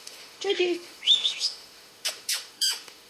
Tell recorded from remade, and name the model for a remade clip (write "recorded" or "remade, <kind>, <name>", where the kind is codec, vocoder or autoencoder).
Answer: remade, autoencoder, DAC-VAE